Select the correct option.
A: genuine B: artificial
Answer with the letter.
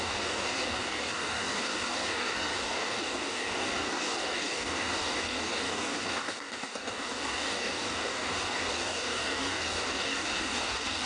B